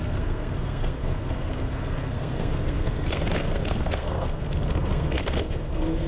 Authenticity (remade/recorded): remade